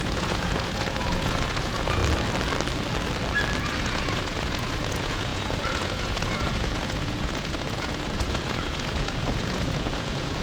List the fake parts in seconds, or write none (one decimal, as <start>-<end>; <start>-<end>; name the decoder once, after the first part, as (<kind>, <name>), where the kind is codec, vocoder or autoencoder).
0.0-2.0 (vocoder, Vocos); 3.6-10.4